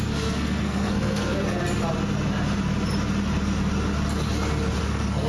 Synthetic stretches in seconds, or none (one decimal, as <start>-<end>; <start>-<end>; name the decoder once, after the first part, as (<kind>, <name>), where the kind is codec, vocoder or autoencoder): 0.0-1.6 (codec, SNAC); 4.8-5.3